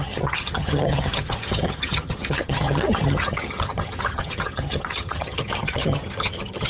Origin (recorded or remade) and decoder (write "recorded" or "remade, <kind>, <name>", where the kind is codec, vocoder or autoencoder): remade, vocoder, HiFi-GAN